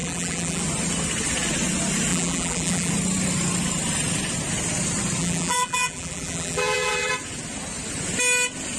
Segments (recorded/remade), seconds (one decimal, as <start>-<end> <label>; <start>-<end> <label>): 0.0-0.6 remade; 0.6-2.1 recorded; 2.1-2.9 remade; 2.9-5.2 recorded; 5.2-7.1 remade; 7.1-8.8 recorded